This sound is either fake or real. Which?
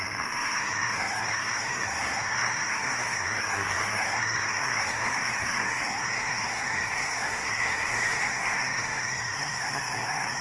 fake